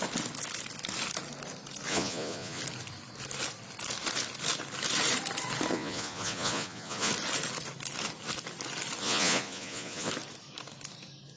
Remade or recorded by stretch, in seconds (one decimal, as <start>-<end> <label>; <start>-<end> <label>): 0.0-1.9 recorded; 1.9-2.6 remade; 2.6-5.7 recorded; 5.7-7.1 remade; 7.1-9.0 recorded; 9.0-10.1 remade; 10.1-11.4 recorded